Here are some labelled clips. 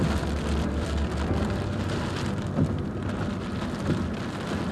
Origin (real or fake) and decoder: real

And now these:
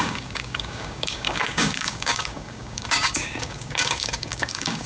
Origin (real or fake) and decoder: fake, codec, DAC